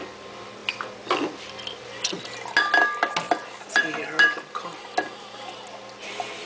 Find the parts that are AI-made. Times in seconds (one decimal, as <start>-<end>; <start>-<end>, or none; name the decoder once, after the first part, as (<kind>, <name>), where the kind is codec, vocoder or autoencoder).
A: none